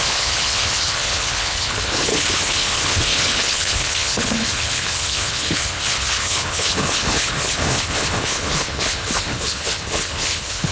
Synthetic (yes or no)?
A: yes